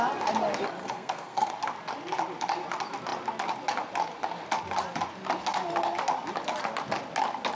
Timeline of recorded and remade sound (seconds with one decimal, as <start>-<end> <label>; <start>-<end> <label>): 0.0-0.8 recorded; 0.8-1.5 remade; 1.5-7.5 recorded